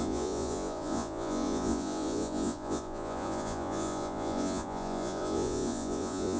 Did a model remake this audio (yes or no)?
yes